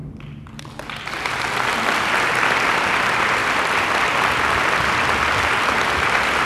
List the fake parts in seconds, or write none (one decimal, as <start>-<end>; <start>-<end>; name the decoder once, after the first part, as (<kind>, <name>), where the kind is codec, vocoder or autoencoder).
none